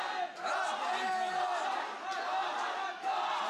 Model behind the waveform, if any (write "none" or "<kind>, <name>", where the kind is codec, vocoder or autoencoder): none